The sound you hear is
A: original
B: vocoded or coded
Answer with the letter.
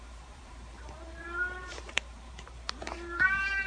B